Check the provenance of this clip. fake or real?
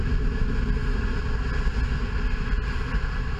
real